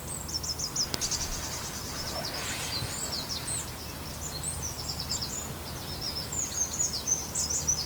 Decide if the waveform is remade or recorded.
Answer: recorded